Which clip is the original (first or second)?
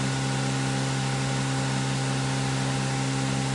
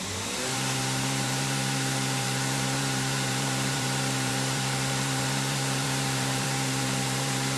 first